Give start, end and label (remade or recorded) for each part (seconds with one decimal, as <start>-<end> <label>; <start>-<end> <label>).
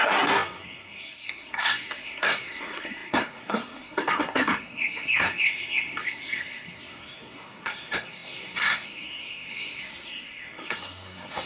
0.0-11.5 remade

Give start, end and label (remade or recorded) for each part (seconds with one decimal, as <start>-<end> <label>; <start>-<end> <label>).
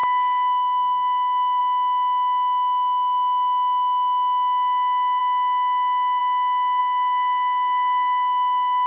0.0-1.6 remade; 1.6-6.8 recorded; 6.8-8.9 remade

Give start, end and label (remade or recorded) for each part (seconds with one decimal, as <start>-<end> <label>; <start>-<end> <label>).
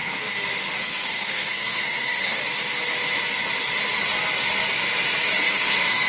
0.0-0.8 recorded; 0.8-2.4 remade; 2.4-5.5 recorded; 5.5-6.1 remade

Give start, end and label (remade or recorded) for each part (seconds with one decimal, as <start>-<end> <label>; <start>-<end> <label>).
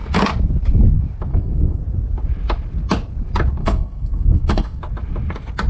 0.0-1.3 recorded; 1.3-1.8 remade; 1.8-3.6 recorded; 3.6-4.8 remade; 4.8-5.7 recorded